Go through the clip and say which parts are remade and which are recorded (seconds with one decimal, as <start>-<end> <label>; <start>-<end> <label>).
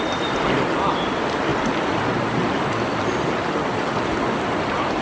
0.0-5.0 recorded